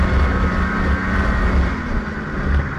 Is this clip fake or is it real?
real